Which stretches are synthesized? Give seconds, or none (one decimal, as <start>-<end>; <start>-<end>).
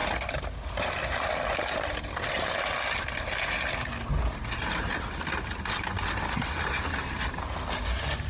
none